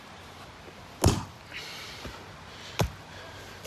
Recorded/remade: recorded